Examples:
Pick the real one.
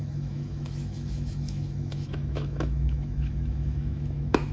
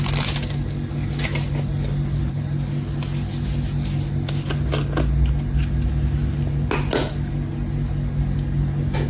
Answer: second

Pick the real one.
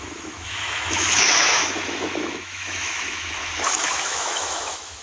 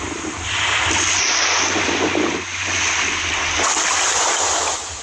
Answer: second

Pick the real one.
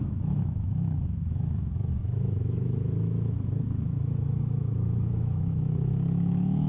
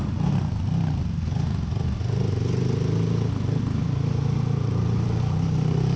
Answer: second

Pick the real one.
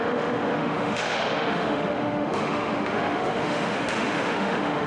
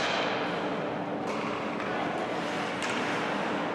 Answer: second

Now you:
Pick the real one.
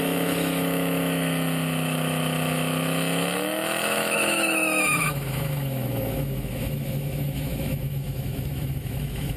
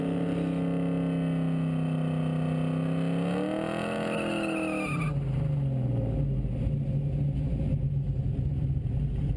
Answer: second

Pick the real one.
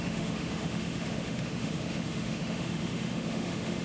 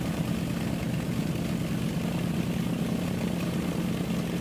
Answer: second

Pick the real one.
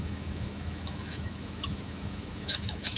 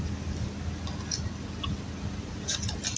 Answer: second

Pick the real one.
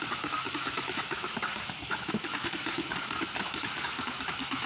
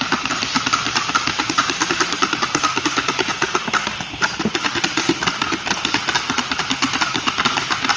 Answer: second